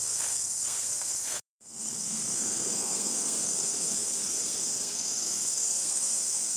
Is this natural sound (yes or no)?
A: no